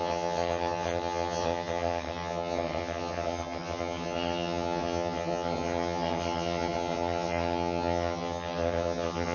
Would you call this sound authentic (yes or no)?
no